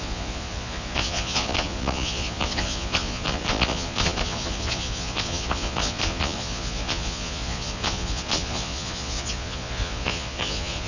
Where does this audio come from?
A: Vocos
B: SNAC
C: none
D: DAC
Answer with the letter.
A